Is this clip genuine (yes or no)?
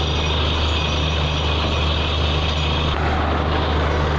yes